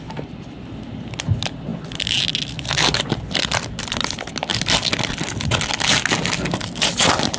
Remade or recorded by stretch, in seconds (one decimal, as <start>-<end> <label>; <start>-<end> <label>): 0.0-7.4 recorded